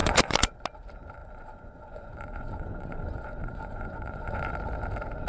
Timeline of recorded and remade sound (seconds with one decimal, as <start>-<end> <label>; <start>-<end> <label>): 0.0-0.5 remade; 0.5-1.2 recorded; 1.2-4.4 remade; 4.4-5.3 recorded

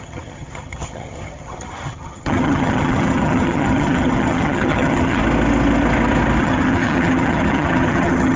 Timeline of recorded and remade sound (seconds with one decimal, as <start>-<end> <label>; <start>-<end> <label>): 0.0-5.2 remade; 5.2-6.4 recorded; 6.4-8.4 remade